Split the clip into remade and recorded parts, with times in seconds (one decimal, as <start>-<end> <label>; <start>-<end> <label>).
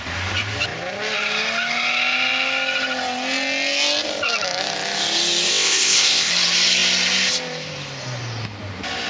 0.0-5.5 recorded; 5.5-6.3 remade; 6.3-9.1 recorded